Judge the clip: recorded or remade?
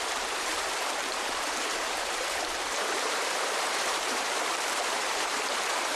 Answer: remade